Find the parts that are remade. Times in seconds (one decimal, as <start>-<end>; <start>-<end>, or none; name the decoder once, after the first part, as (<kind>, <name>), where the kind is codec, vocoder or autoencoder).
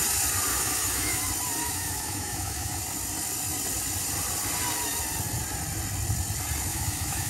0.5-1.2 (autoencoder, DAC-VAE); 1.6-2.8; 6.7-7.3